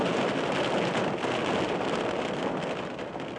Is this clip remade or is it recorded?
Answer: recorded